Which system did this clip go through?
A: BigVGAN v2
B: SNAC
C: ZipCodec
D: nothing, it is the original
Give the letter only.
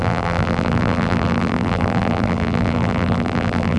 A